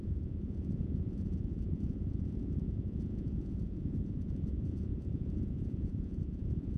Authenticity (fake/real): fake